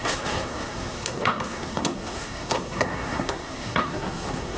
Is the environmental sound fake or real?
fake